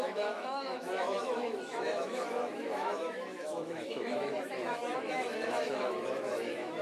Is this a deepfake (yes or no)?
yes